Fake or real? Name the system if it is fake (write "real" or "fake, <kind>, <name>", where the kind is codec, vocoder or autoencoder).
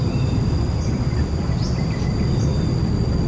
real